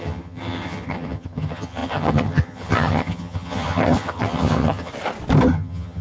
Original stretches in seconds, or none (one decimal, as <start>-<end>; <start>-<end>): 4.9-5.5